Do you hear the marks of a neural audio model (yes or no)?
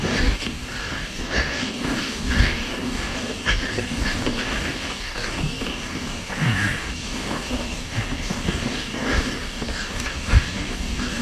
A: yes